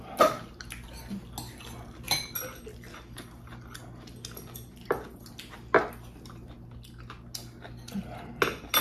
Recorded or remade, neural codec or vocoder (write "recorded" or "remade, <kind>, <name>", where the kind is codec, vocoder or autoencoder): recorded